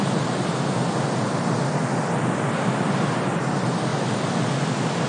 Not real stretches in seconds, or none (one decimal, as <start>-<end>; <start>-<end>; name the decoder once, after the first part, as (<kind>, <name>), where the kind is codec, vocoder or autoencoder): none